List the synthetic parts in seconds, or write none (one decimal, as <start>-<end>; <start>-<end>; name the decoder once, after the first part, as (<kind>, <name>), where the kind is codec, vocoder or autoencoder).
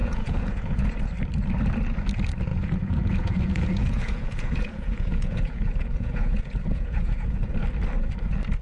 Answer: 0.0-1.0 (vocoder, Vocos); 2.5-7.5